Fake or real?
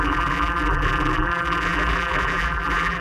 fake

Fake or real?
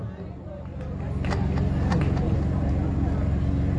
real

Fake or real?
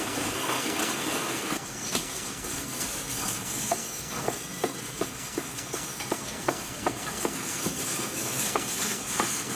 fake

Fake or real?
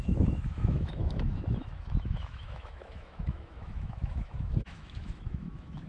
fake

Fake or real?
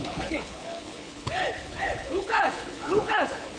fake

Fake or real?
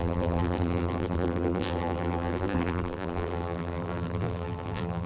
fake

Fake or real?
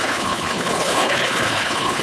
fake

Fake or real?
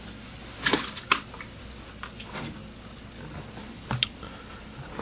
real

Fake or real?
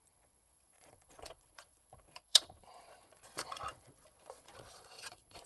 fake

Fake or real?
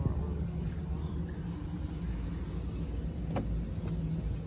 real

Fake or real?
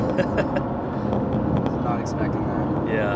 real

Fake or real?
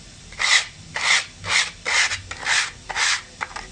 real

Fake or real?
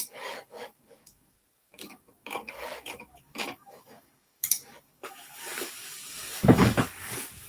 fake